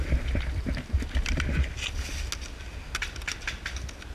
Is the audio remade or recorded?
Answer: recorded